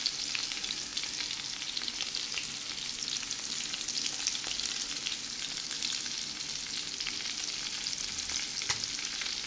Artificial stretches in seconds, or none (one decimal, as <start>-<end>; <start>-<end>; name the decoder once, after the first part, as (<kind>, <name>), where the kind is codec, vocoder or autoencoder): none